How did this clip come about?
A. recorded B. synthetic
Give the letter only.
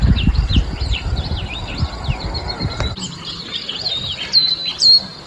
B